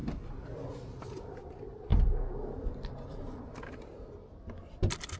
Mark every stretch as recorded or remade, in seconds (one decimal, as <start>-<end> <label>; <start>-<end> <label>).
0.0-1.0 recorded; 1.0-1.9 remade; 1.9-2.9 recorded; 2.9-3.9 remade; 3.9-5.2 recorded